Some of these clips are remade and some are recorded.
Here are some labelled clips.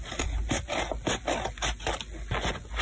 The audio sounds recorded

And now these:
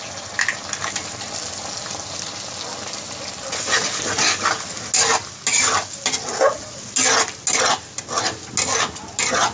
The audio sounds recorded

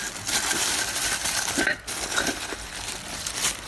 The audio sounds remade